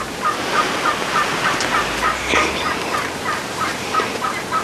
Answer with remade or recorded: recorded